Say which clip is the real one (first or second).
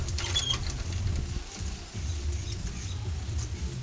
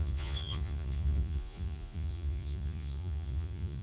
first